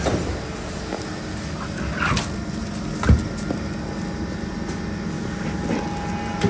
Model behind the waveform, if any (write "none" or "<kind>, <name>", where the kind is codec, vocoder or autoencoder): none